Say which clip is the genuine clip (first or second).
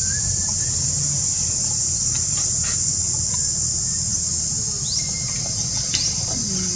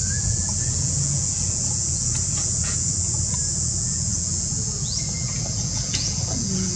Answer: first